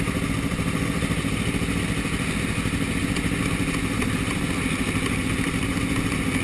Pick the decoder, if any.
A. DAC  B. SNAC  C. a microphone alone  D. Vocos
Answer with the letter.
C